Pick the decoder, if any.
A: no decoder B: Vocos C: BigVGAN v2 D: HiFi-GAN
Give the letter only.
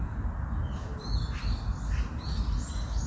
A